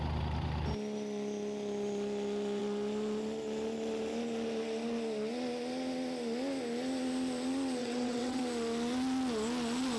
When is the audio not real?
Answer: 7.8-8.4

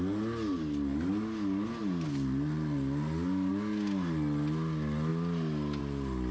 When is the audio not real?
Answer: none